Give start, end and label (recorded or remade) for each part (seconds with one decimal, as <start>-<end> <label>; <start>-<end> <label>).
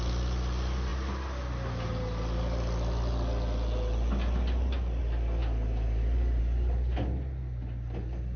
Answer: 0.0-8.4 recorded